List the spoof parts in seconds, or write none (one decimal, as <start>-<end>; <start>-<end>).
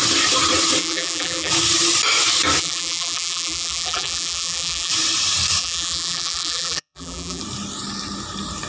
0.8-1.5; 2.6-4.9; 5.6-7.4